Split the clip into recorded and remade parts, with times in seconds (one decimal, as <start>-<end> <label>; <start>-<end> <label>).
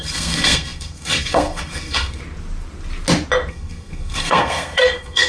0.0-2.2 remade; 2.2-3.5 recorded; 3.5-5.3 remade